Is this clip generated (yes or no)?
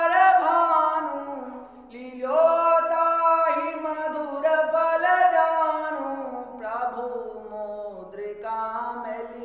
no